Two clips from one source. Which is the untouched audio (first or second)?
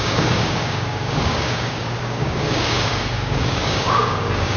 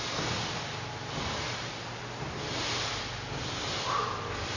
second